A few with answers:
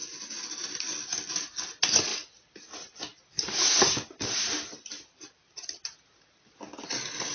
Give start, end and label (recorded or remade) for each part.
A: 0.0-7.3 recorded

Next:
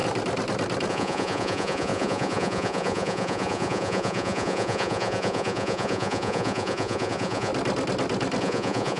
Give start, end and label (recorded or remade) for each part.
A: 0.0-0.9 recorded; 0.9-7.5 remade; 7.5-8.4 recorded; 8.4-9.0 remade

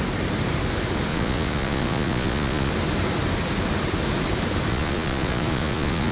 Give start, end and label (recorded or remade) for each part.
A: 0.0-1.1 recorded; 1.1-2.7 remade; 2.7-4.7 recorded; 4.7-6.1 remade

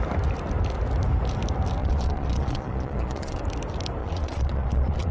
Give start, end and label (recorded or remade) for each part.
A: 0.0-1.8 recorded; 1.8-3.4 remade; 3.4-4.0 recorded; 4.0-5.1 remade

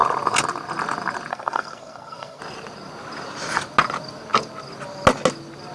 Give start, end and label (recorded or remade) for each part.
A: 0.0-1.3 recorded; 1.3-2.4 remade; 2.4-5.7 recorded